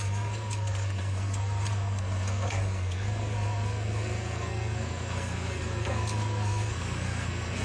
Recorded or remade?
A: remade